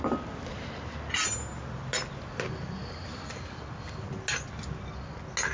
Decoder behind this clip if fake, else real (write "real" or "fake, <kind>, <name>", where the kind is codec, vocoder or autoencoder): real